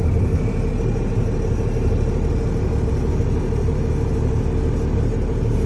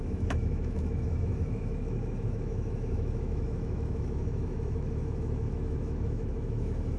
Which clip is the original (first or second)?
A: first